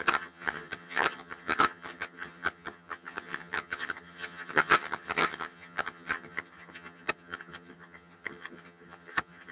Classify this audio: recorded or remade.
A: remade